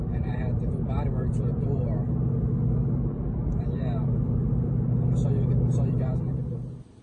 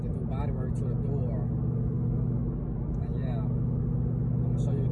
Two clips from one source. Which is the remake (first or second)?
first